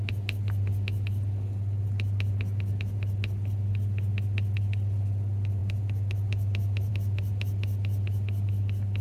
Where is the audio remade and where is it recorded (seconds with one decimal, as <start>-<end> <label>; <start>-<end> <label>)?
0.0-9.0 recorded